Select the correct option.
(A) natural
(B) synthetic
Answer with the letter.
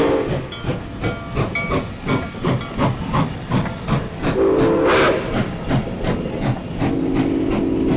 A